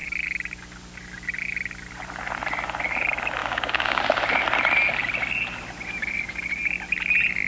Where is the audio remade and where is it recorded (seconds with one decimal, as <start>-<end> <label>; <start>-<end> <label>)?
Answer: 0.0-3.4 recorded; 3.4-4.0 remade; 4.0-7.5 recorded